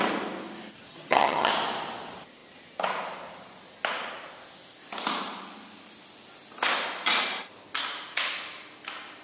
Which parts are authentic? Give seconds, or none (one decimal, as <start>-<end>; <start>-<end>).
0.0-0.9; 1.5-9.2